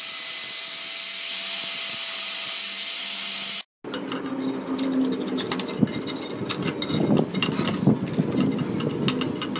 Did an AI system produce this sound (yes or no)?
no